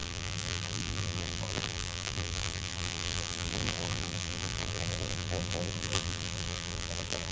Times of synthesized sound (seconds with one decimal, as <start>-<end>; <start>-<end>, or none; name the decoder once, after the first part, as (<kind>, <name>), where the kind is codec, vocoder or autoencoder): 0.0-7.3 (vocoder, BigVGAN v2)